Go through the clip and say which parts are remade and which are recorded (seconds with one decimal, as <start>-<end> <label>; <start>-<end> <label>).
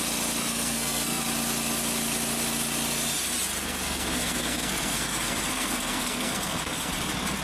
0.0-0.4 recorded; 0.4-1.2 remade; 1.2-3.6 recorded; 3.6-6.9 remade; 6.9-7.4 recorded